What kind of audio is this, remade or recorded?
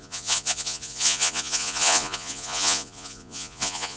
remade